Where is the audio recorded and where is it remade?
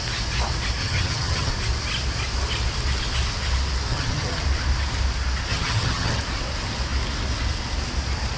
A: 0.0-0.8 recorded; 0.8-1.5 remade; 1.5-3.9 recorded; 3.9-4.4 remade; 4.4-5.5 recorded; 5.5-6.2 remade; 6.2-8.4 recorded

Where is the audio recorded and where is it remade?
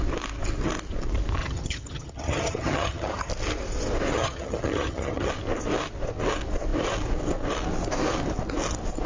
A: 0.0-1.4 recorded; 1.4-3.3 remade; 3.3-4.1 recorded; 4.1-5.3 remade; 5.3-9.1 recorded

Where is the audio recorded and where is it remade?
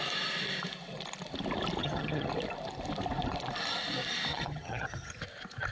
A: 0.0-1.8 recorded; 1.8-2.3 remade; 2.3-4.3 recorded; 4.3-5.2 remade; 5.2-5.7 recorded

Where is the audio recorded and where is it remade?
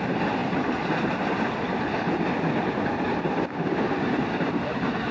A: 0.0-5.1 recorded